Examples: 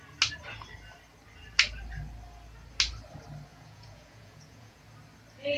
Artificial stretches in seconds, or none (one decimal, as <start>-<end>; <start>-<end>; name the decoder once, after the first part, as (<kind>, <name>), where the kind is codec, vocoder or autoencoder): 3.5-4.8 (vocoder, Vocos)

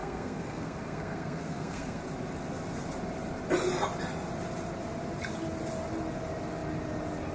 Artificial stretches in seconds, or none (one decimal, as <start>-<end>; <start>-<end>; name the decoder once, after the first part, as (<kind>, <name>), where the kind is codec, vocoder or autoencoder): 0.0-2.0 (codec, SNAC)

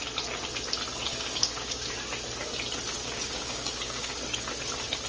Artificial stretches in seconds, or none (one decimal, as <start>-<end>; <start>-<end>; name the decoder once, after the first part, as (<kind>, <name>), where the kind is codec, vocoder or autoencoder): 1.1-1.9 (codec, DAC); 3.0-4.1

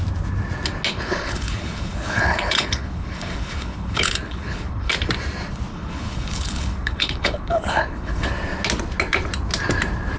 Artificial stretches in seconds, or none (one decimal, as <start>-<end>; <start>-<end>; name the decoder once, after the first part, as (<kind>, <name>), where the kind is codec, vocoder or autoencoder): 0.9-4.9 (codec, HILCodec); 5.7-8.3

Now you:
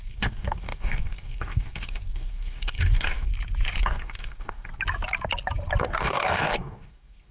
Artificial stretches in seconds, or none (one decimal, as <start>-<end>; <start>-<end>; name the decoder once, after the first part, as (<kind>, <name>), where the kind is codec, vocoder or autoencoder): 0.0-3.3 (codec, DAC); 3.8-4.7; 5.8-7.3

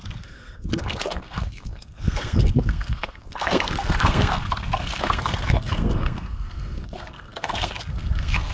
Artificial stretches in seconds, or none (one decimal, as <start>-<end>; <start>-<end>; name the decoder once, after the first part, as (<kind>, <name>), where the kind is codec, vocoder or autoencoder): 0.0-8.5 (codec, SNAC)